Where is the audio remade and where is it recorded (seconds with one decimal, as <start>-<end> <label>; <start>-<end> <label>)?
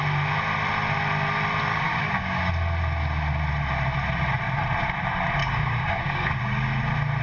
0.0-1.7 recorded; 1.7-2.5 remade; 2.5-5.4 recorded; 5.4-6.8 remade; 6.8-7.2 recorded